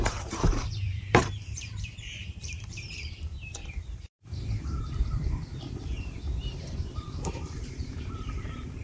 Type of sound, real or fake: fake